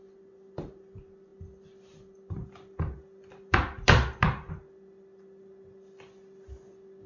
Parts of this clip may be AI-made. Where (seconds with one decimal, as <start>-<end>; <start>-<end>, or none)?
none